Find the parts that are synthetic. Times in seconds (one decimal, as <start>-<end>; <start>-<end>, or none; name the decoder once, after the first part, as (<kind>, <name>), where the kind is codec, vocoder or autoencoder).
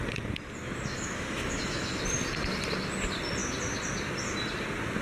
0.9-2.0 (autoencoder, DAC-VAE)